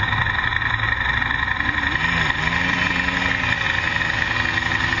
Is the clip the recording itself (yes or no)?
yes